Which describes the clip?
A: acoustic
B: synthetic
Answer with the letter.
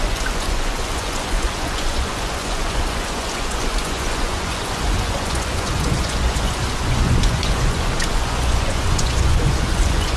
B